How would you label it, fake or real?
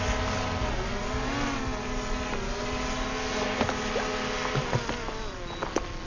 real